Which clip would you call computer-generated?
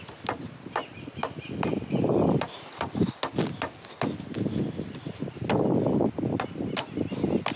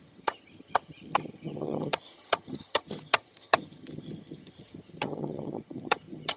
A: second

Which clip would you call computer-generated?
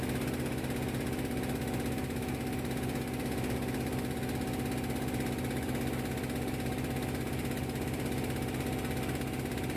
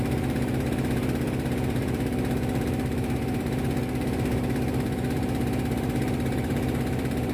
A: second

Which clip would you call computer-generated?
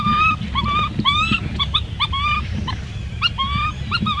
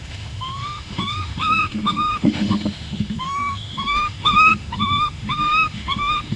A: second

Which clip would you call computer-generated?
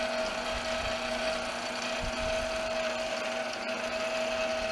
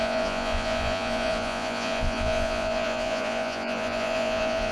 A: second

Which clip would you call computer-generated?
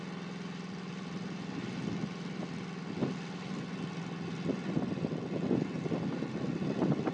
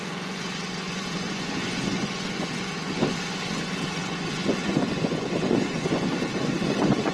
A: second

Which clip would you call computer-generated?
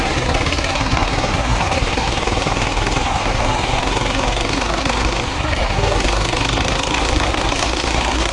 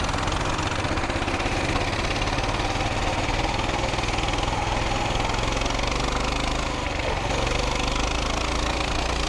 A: first